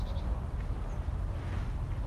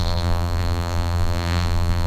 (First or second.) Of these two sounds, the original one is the first